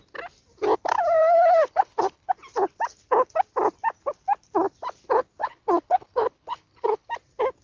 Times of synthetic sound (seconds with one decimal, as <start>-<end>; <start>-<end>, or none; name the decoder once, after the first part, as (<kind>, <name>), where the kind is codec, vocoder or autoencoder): 1.2-2.3 (codec, HILCodec); 5.4-7.1